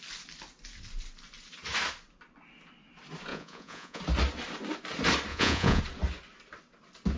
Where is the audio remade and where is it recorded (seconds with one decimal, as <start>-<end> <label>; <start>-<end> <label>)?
0.0-3.3 recorded; 3.3-4.0 remade; 4.0-5.3 recorded; 5.3-5.8 remade; 5.8-7.2 recorded